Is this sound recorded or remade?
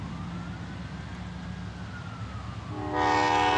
recorded